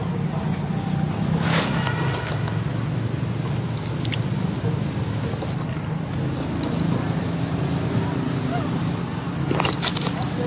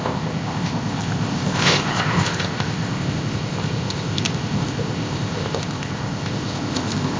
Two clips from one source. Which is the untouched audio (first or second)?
first